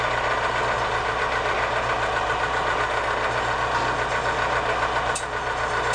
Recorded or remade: recorded